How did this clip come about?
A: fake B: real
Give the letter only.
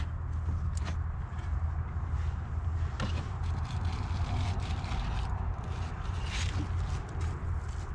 B